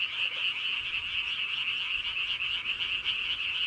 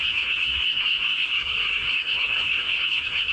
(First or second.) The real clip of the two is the first